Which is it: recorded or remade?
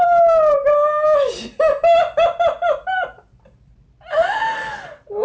recorded